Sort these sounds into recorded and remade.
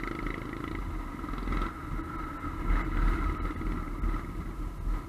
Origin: recorded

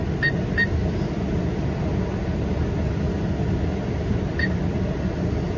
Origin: recorded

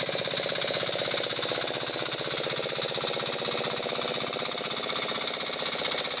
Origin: recorded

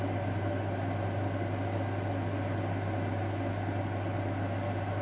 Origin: recorded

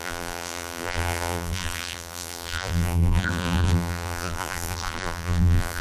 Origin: remade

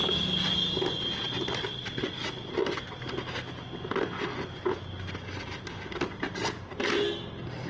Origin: recorded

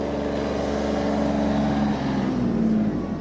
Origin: recorded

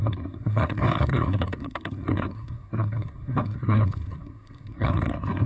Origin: remade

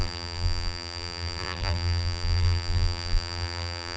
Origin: remade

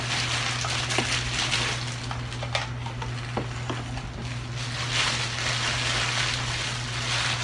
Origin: recorded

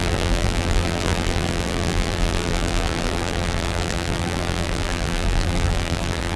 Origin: remade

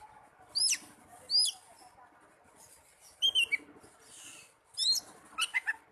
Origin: recorded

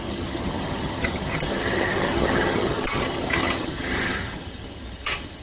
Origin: remade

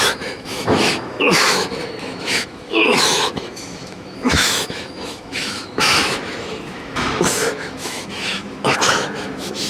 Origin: remade